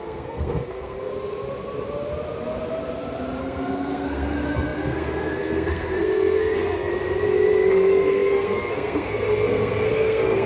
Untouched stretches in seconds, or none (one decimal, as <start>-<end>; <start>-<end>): 1.1-3.4; 6.9-7.7